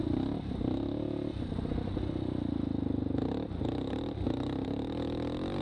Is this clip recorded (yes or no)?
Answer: yes